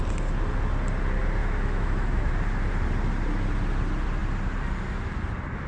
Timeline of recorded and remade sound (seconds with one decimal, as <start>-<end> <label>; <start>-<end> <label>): 0.0-1.4 recorded; 1.4-2.3 remade; 2.3-5.7 recorded